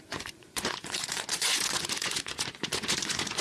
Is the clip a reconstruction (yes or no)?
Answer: yes